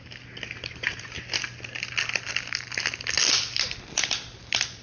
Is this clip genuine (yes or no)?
yes